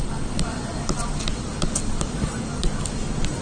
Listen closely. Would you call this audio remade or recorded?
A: recorded